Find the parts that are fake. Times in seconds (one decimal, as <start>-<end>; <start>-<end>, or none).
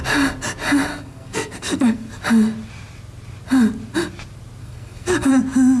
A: 0.9-2.2; 4.6-5.3